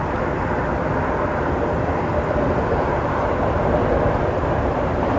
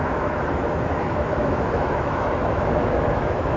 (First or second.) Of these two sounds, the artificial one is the second